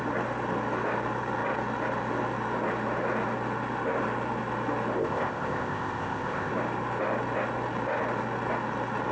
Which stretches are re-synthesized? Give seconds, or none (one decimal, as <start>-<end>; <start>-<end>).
5.0-6.5